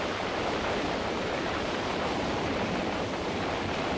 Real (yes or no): no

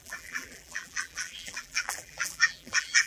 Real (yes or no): no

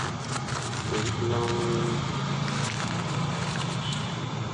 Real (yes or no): yes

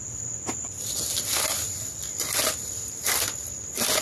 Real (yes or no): yes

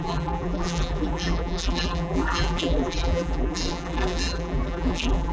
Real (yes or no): no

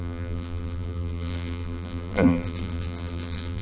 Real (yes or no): no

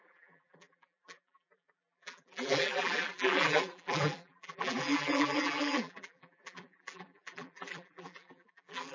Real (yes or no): no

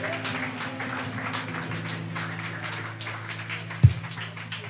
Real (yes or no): yes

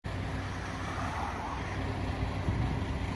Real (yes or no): yes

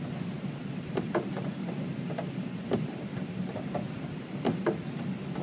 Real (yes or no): yes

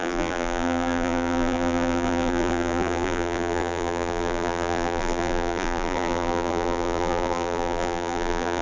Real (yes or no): no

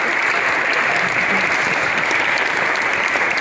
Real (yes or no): no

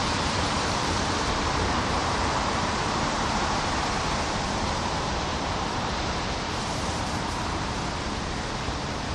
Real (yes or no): no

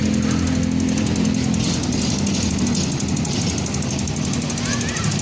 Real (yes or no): yes